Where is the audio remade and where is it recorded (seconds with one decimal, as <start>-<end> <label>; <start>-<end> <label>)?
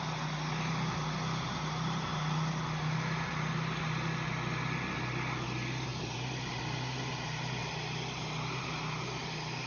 0.0-5.9 recorded; 5.9-6.4 remade; 6.4-9.7 recorded